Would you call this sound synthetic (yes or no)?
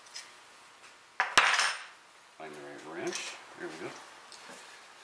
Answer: no